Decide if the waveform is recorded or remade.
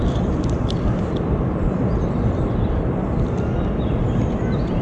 recorded